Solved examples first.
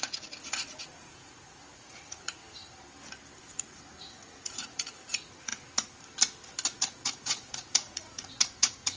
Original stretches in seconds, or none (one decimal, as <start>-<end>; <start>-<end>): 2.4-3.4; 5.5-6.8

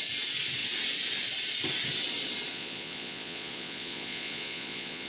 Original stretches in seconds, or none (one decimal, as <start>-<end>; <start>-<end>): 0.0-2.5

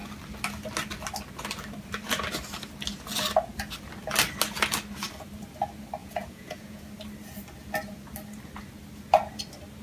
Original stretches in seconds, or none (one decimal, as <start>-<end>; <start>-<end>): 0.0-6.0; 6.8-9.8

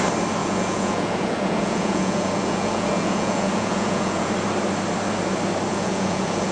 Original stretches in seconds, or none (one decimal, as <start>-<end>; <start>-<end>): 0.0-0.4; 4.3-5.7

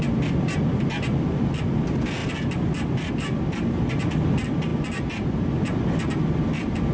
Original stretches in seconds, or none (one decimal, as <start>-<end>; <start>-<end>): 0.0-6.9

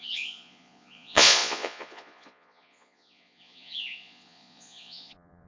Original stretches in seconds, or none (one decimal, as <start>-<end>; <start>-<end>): none

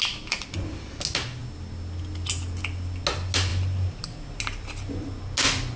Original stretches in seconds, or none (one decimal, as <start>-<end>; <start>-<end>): 0.0-5.8